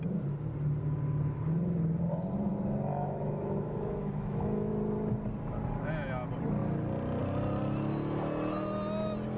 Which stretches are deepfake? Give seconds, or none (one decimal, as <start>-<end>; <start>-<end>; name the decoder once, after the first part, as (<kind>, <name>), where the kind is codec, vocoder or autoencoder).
2.9-4.7 (autoencoder, DAC-VAE)